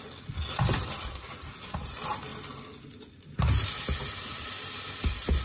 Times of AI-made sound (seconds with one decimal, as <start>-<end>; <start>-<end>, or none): none